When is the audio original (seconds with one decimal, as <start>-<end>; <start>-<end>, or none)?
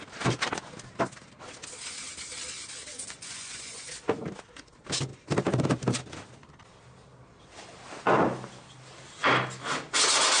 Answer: 0.0-2.9; 3.9-10.4